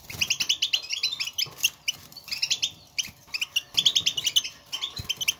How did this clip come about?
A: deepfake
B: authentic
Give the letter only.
B